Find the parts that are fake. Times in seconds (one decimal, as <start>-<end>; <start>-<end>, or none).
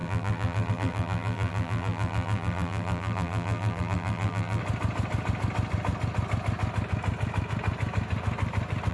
0.0-4.6